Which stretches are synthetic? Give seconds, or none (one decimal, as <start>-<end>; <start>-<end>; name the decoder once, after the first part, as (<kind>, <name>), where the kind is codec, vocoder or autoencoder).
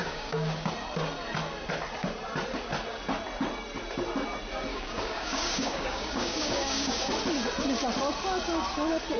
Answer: 0.0-0.7 (codec, DAC); 4.7-7.1